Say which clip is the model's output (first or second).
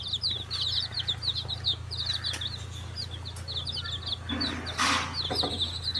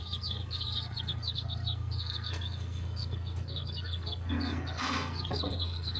second